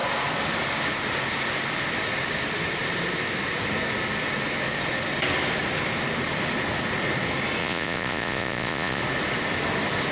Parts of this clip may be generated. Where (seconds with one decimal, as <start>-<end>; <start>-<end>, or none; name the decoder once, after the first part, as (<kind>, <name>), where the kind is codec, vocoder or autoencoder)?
7.6-9.0 (vocoder, Vocos)